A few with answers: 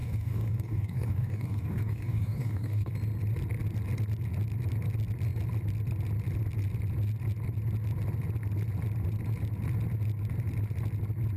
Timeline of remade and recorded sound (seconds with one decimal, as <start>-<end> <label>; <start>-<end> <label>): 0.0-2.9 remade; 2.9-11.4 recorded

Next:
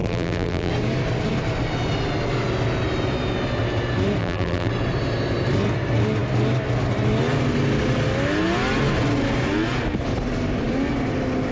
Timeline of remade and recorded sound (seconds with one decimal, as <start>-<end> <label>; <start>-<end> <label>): 0.0-0.7 remade; 0.7-4.2 recorded; 4.2-4.7 remade; 4.7-11.5 recorded

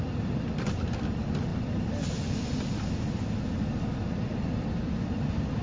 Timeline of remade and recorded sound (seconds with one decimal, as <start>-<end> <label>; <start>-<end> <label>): 0.0-1.5 recorded; 1.5-2.2 remade; 2.2-4.3 recorded; 4.3-4.9 remade; 4.9-5.6 recorded

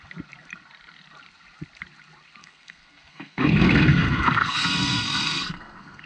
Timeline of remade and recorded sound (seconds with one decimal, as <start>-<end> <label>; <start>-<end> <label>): 0.0-2.4 recorded; 2.4-6.1 remade